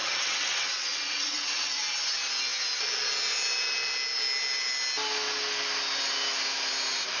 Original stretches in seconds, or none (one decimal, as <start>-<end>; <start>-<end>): 1.8-7.2